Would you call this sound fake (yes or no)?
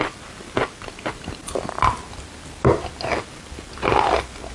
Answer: no